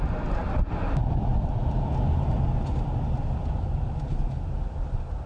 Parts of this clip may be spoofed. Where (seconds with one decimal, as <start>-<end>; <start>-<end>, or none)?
none